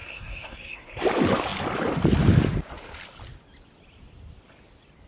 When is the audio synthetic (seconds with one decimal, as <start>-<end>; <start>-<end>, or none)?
0.0-1.0